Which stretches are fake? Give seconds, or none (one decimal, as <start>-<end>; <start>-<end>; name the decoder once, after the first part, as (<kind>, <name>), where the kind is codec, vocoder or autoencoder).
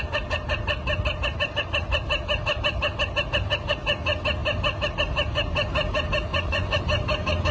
6.3-6.8 (vocoder, Vocos)